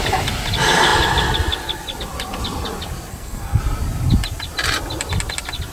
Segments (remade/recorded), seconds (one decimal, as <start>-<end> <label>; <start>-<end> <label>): 0.0-3.1 recorded; 3.1-3.6 remade; 3.6-5.7 recorded